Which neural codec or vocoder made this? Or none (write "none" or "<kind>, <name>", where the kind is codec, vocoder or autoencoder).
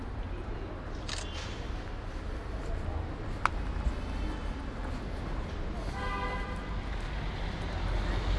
none